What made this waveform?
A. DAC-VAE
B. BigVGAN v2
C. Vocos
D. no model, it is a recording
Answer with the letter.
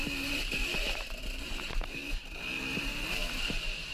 B